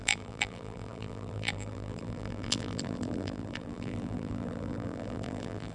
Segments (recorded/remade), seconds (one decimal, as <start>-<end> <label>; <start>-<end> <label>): 0.0-5.7 remade